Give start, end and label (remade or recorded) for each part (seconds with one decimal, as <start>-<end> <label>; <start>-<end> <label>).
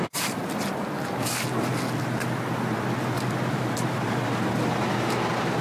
0.0-0.4 remade; 0.4-3.5 recorded; 3.5-5.6 remade